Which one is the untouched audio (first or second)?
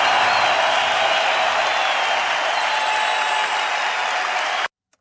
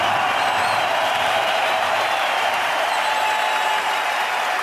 first